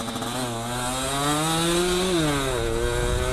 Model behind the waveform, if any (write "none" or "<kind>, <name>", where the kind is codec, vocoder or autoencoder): none